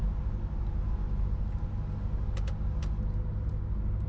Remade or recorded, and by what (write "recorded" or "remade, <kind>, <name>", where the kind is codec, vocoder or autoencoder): recorded